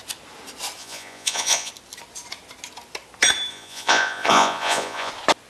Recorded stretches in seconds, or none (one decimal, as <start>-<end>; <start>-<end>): 0.0-0.8; 1.7-3.5; 5.1-5.5